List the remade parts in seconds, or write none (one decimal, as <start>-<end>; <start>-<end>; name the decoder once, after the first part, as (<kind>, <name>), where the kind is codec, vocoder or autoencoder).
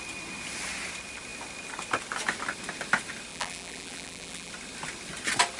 3.3-4.5 (vocoder, BigVGAN v2)